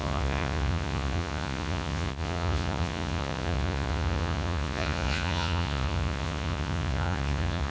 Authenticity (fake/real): fake